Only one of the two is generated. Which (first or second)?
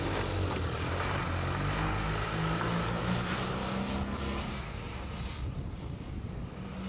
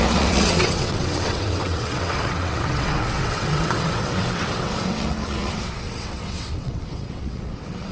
second